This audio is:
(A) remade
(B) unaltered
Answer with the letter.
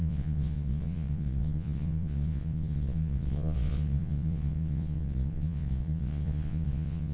A